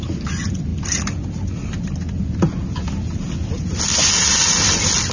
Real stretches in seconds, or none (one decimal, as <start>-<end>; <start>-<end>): 0.0-5.1